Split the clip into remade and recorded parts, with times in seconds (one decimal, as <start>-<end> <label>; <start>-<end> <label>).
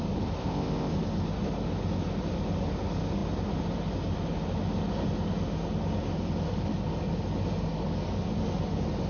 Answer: 0.0-0.4 recorded; 0.4-0.9 remade; 0.9-9.1 recorded